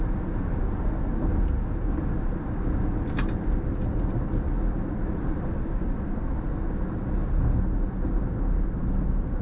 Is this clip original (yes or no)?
yes